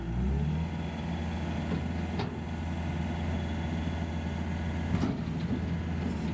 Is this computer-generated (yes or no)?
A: no